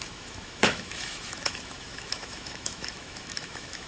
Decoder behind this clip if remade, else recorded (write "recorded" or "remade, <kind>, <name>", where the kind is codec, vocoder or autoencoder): remade, autoencoder, DAC-VAE